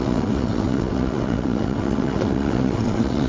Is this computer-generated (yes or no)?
yes